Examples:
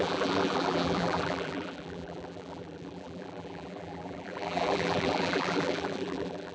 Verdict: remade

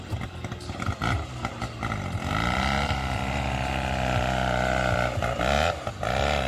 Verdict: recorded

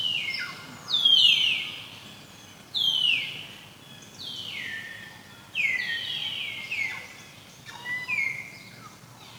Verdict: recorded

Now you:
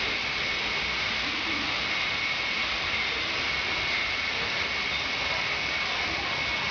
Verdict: recorded